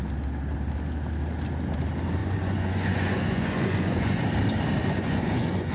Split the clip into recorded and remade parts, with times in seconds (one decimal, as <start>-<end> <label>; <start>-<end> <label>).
0.0-2.2 recorded; 2.2-4.2 remade; 4.2-4.8 recorded; 4.8-5.7 remade